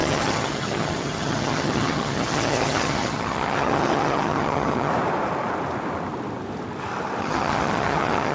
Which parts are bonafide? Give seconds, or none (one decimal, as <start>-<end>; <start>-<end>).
4.9-7.2